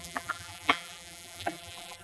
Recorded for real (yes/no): no